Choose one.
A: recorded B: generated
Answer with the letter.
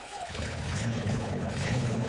B